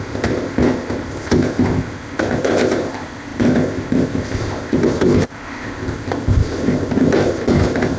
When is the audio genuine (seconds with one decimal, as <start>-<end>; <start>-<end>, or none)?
none